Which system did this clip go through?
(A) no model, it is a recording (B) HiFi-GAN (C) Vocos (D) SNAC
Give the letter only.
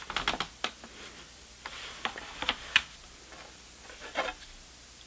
A